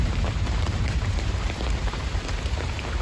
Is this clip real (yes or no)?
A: no